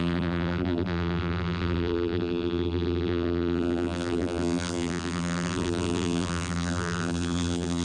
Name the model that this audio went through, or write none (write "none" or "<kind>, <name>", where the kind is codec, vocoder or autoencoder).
vocoder, BigVGAN v2